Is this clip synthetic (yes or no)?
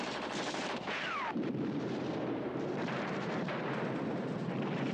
yes